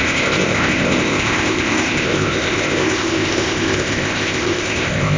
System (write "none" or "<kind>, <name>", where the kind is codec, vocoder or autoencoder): codec, ZipCodec